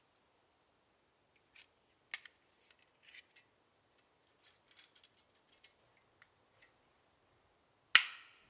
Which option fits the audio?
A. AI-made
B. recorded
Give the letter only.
B